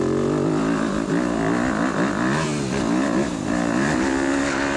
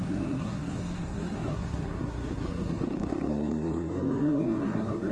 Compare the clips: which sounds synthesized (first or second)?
second